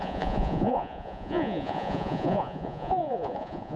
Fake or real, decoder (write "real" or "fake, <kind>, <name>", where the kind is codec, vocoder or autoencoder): fake, vocoder, Vocos